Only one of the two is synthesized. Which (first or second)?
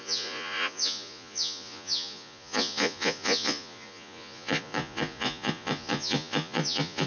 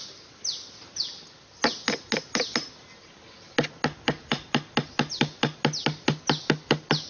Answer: first